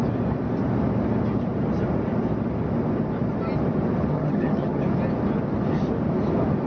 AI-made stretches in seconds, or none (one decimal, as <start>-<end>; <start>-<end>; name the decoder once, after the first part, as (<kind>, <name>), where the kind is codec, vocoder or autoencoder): 4.1-4.8 (vocoder, HiFi-GAN)